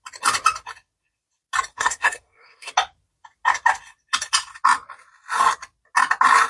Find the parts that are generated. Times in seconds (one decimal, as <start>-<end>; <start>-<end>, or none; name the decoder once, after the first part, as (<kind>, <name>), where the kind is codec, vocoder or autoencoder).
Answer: 1.7-2.7 (codec, SNAC)